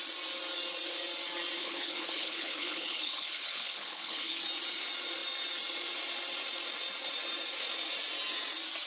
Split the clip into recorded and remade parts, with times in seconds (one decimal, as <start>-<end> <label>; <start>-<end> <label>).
0.0-1.6 recorded; 1.6-4.4 remade; 4.4-8.9 recorded